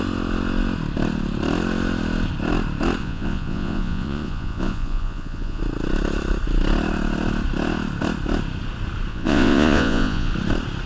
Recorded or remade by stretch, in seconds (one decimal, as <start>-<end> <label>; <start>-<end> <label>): 0.0-3.0 recorded; 3.0-5.6 remade; 5.6-9.1 recorded; 9.1-10.3 remade; 10.3-10.9 recorded